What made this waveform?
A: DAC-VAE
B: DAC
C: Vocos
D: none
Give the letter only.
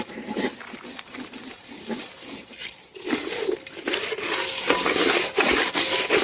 D